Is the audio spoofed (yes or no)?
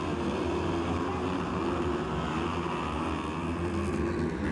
no